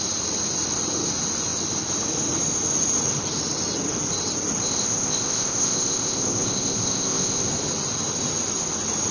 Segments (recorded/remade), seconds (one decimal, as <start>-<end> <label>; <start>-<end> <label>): 0.0-4.6 recorded; 4.6-7.5 remade; 7.5-9.1 recorded